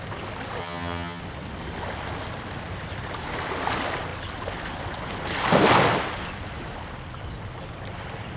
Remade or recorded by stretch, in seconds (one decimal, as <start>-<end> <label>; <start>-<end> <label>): 0.0-0.6 recorded; 0.6-1.2 remade; 1.2-8.4 recorded